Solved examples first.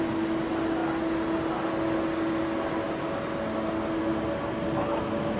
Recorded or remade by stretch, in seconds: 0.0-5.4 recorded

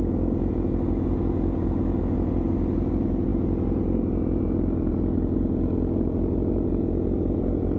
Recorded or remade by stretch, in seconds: 0.0-7.8 recorded

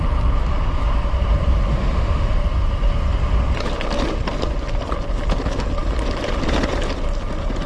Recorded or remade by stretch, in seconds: 0.0-1.7 recorded; 1.7-2.3 remade; 2.3-7.7 recorded

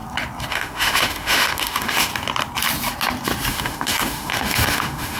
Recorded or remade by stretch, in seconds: 0.0-0.5 recorded; 0.5-2.1 remade; 2.1-3.5 recorded; 3.5-5.2 remade

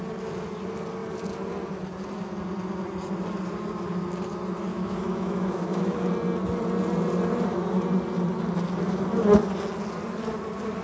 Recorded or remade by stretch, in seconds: 0.0-4.7 recorded; 4.7-6.1 remade; 6.1-10.8 recorded

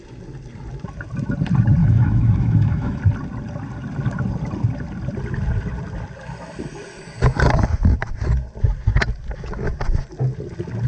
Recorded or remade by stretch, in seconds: 0.0-1.8 recorded; 1.8-3.0 remade; 3.0-10.9 recorded